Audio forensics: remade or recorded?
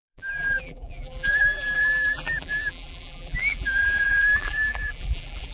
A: remade